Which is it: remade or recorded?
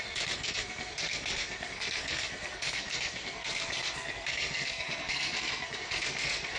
remade